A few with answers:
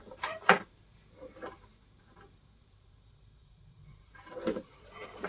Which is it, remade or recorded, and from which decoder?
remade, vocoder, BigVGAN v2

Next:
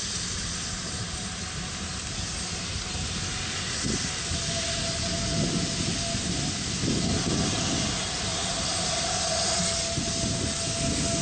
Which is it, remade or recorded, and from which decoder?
recorded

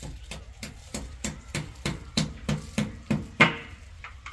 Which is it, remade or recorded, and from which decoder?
remade, vocoder, BigVGAN v2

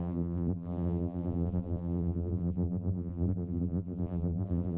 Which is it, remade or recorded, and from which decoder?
remade, vocoder, BigVGAN v2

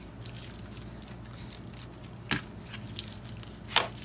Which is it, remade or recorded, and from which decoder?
recorded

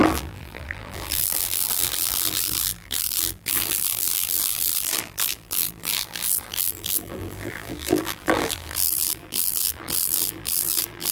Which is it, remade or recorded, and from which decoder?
remade, vocoder, BigVGAN v2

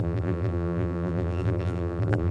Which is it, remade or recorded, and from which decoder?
remade, vocoder, BigVGAN v2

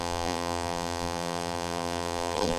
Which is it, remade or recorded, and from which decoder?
remade, vocoder, BigVGAN v2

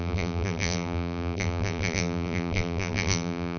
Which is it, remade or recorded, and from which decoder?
remade, vocoder, BigVGAN v2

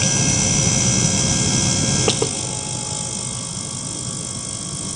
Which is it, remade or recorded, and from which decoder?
recorded